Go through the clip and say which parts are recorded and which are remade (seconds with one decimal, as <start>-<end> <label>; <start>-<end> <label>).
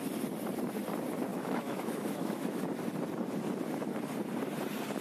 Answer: 0.0-1.3 recorded; 1.3-2.6 remade; 2.6-5.0 recorded